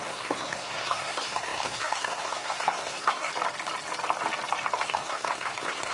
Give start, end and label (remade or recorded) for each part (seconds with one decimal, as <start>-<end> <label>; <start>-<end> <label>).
0.0-3.3 remade; 3.3-4.8 recorded; 4.8-5.9 remade